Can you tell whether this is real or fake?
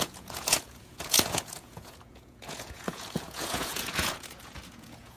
fake